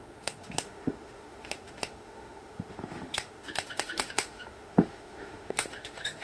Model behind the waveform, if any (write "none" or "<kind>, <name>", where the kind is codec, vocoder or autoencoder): autoencoder, DAC-VAE